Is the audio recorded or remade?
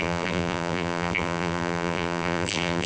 remade